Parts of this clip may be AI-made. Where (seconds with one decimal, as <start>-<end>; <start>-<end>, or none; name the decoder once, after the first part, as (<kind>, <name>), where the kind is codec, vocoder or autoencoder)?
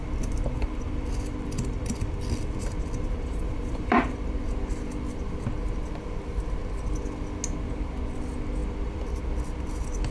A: 0.0-4.4 (vocoder, BigVGAN v2); 8.6-9.2